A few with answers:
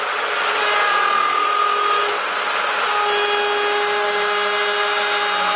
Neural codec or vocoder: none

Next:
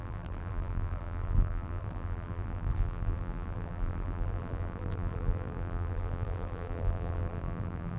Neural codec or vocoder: vocoder, BigVGAN v2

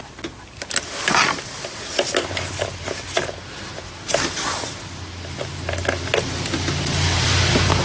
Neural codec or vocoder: none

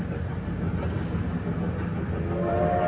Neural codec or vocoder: none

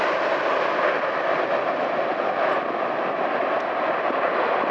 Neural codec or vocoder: none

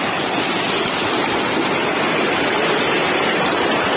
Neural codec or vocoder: none